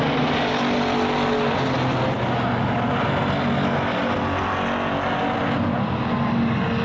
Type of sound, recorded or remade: recorded